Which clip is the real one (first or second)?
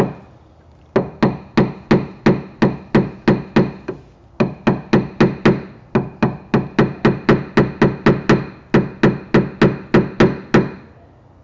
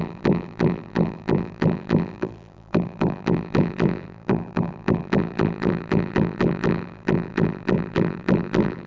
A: first